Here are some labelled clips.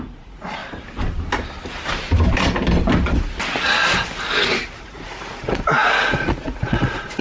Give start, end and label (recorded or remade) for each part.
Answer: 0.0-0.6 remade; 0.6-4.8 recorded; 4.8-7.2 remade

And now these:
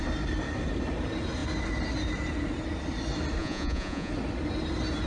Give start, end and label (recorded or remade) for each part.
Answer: 0.0-3.4 recorded; 3.4-4.1 remade; 4.1-5.1 recorded

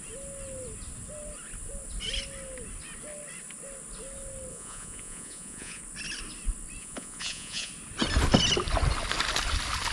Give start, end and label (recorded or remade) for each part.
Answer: 0.0-4.5 recorded; 4.5-5.8 remade; 5.8-6.8 recorded; 6.8-7.7 remade; 7.7-9.9 recorded

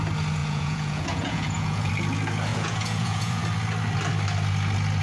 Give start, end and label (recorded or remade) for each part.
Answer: 0.0-0.4 recorded; 0.4-1.9 remade; 1.9-2.5 recorded; 2.5-3.4 remade; 3.4-5.0 recorded

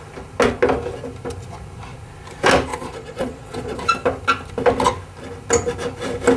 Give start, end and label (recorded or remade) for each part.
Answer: 0.0-2.7 recorded; 2.7-3.8 remade; 3.8-6.4 recorded